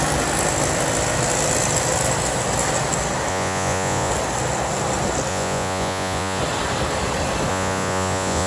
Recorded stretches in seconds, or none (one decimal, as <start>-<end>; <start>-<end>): 0.0-3.3; 4.1-5.3; 6.4-7.5